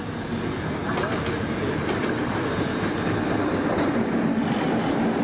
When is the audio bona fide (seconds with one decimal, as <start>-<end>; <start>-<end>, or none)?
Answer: 0.0-5.2